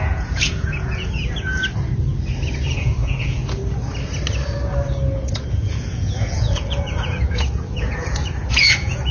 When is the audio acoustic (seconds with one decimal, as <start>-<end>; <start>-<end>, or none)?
1.6-2.7; 3.6-5.5